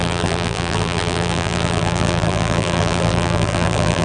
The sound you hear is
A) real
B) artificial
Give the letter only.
B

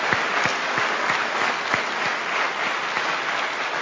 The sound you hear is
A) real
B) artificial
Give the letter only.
A